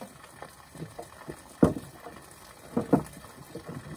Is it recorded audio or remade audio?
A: recorded